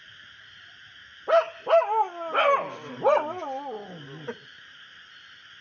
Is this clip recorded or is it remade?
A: recorded